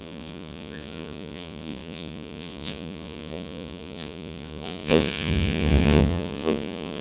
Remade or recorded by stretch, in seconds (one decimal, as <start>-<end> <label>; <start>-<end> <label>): 0.0-7.0 remade